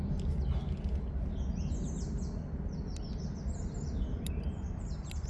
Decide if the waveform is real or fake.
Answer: real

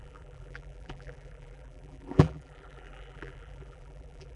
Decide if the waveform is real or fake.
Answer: fake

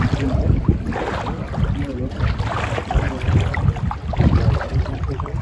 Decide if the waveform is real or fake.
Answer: real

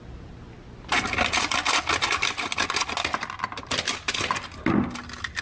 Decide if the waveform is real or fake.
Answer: real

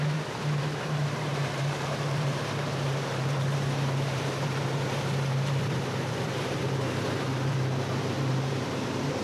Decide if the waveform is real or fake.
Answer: fake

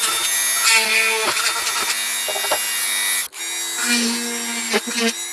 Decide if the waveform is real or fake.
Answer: real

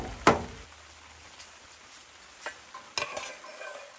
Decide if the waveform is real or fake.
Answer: real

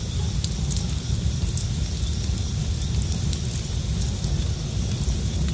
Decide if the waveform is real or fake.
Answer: real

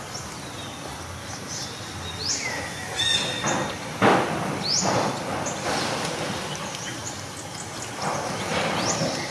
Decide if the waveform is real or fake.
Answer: real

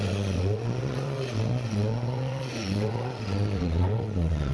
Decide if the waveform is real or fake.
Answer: fake